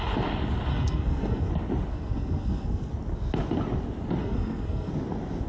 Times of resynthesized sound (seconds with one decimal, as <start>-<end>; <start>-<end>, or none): 0.7-1.5; 1.9-2.9; 4.2-4.9